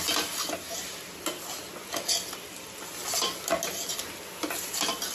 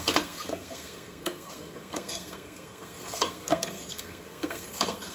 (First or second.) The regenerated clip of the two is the second